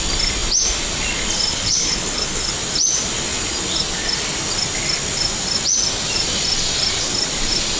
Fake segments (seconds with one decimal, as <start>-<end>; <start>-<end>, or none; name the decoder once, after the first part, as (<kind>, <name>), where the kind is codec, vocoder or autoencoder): 1.5-2.5 (codec, HILCodec)